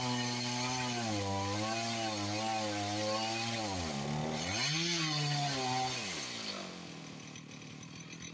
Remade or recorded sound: recorded